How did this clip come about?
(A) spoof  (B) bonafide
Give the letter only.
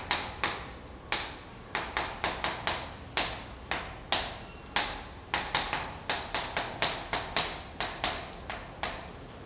B